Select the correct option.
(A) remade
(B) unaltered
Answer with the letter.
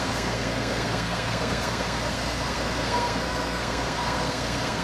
A